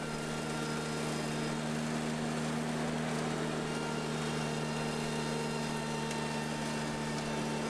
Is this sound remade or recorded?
recorded